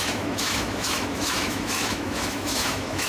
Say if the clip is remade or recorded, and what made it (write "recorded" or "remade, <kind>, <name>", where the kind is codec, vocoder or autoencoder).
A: remade, autoencoder, DAC-VAE